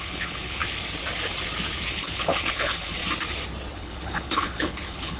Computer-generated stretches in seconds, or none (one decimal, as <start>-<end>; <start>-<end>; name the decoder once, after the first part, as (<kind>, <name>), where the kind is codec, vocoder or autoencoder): 0.0-0.6 (codec, HILCodec); 1.9-3.0; 3.7-5.2